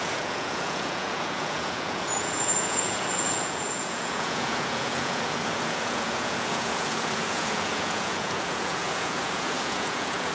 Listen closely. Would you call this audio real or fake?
fake